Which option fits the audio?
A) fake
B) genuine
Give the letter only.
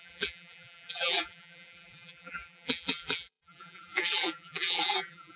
A